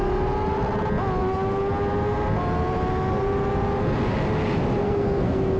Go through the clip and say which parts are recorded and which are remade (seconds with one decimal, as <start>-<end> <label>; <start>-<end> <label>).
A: 0.0-4.8 recorded; 4.8-5.6 remade